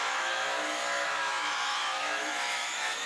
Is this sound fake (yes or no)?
yes